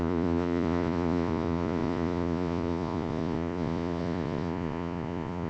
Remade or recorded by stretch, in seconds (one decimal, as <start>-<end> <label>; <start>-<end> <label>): 0.0-5.5 remade